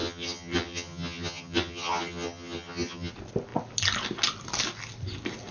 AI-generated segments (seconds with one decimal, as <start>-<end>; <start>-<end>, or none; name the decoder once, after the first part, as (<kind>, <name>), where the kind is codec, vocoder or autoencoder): 0.0-3.1 (vocoder, HiFi-GAN)